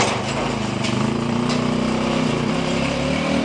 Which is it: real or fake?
fake